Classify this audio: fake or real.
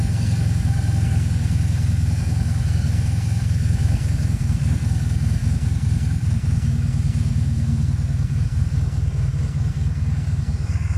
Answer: fake